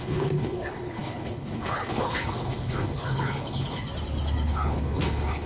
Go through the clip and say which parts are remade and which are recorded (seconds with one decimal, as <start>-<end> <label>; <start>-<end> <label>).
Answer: 0.0-3.8 remade; 3.8-4.5 recorded; 4.5-5.5 remade